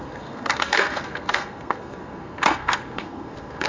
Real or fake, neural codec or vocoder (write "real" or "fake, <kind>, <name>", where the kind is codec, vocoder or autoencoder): fake, codec, SNAC